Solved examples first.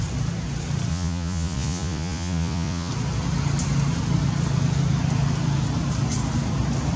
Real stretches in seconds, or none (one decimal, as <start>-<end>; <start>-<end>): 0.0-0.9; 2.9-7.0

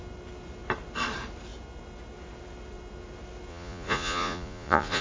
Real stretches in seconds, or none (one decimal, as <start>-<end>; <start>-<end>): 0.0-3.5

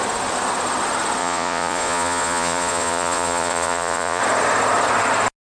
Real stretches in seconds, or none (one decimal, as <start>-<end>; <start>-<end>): 0.0-1.2; 4.2-5.5

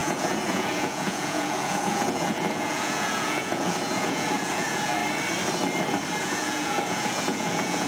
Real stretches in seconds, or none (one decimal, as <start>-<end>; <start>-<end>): 5.0-6.2

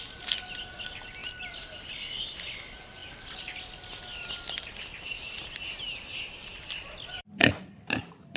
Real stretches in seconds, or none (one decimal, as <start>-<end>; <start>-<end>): 0.0-8.4